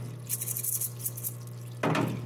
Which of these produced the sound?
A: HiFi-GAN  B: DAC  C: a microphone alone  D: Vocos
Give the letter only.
C